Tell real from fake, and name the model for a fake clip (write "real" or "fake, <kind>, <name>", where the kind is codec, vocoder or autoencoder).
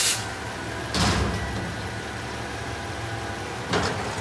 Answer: real